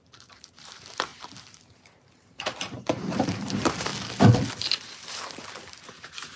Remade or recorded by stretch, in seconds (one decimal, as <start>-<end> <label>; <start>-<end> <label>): 0.0-3.9 remade; 3.9-4.6 recorded; 4.6-6.4 remade